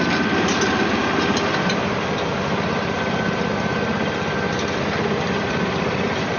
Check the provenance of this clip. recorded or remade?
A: remade